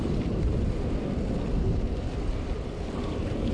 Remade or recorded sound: recorded